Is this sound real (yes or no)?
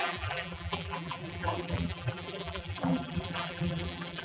no